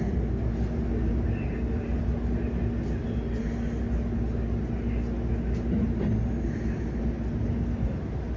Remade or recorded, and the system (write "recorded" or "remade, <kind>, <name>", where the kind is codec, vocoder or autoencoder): recorded